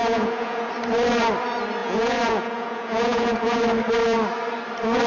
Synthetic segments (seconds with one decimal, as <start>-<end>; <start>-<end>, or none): 0.0-0.7; 1.8-3.6